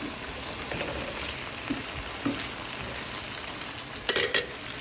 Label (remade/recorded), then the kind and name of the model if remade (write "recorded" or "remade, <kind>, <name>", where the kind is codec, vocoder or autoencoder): recorded